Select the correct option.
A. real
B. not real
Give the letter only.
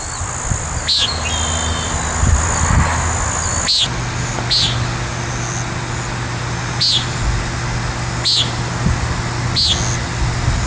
A